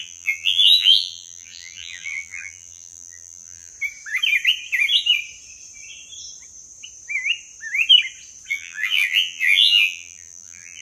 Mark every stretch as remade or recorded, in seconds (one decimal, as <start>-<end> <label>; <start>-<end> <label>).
0.0-3.7 remade; 3.7-8.5 recorded; 8.5-10.8 remade